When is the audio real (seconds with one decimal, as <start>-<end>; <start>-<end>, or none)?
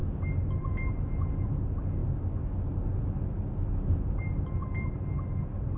0.0-5.8